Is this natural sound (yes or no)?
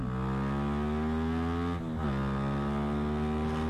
yes